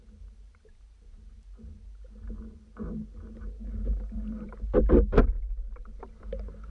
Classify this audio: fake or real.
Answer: real